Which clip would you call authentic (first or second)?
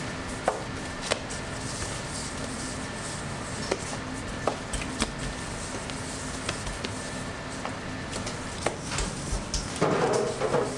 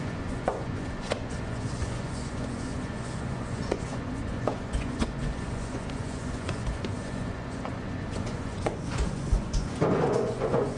first